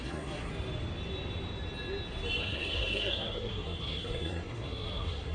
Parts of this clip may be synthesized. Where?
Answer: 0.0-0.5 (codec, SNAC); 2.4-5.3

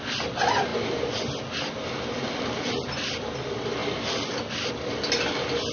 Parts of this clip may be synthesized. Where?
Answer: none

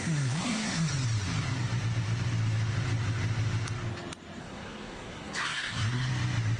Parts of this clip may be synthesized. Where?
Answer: 0.0-0.9 (codec, SNAC); 4.4-6.1